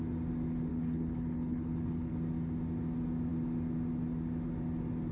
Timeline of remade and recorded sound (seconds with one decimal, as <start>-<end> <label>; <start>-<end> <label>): 0.0-0.7 recorded; 0.7-2.1 remade; 2.1-5.1 recorded